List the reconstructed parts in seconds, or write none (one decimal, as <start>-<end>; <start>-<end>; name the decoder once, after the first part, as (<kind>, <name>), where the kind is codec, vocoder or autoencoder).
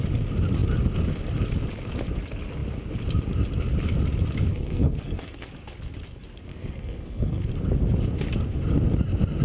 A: 4.5-5.5 (codec, SNAC); 6.5-7.5